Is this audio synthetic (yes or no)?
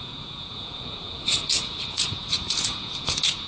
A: yes